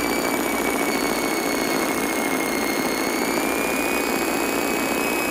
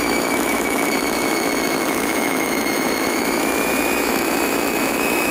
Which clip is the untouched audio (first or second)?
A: first